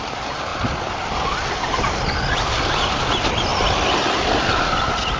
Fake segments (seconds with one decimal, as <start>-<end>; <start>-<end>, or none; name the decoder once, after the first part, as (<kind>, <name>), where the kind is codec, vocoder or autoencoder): none